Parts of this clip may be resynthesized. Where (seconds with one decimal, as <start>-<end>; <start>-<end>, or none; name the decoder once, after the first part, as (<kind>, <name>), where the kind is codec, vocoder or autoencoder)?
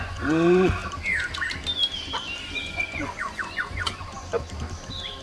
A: 0.0-0.8 (vocoder, Vocos); 2.5-4.3